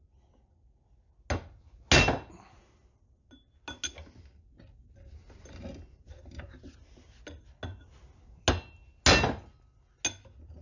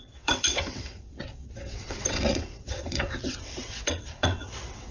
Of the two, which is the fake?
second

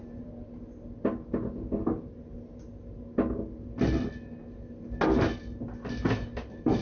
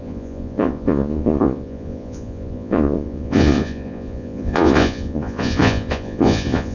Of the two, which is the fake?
second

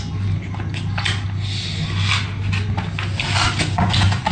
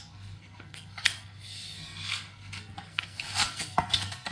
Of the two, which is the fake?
second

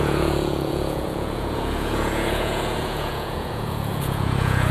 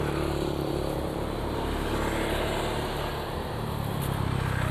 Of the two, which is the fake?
first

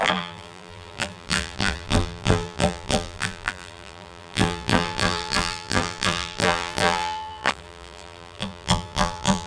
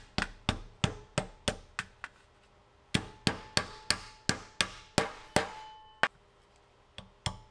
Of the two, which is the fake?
first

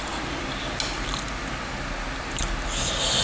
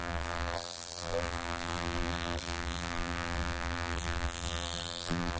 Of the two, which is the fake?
second